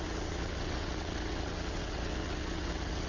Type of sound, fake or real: fake